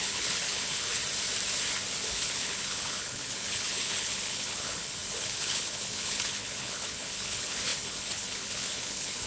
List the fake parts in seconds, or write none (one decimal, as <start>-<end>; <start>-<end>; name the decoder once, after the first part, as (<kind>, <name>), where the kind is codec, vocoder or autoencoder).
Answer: 0.0-1.0 (codec, HILCodec); 2.1-9.3